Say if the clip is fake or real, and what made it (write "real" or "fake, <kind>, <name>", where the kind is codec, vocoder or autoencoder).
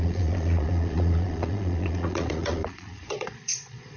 fake, vocoder, Vocos